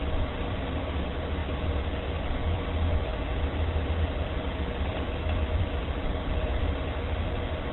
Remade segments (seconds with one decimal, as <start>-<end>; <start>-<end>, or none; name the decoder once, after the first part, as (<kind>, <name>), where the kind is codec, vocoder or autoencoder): 0.0-1.4 (vocoder, BigVGAN v2); 2.2-3.1; 4.7-7.7